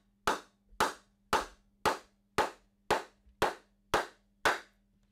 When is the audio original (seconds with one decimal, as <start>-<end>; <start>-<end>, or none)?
0.0-5.1